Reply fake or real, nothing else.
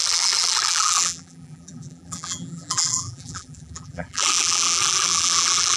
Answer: fake